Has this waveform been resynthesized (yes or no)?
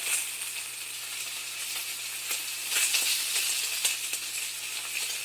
no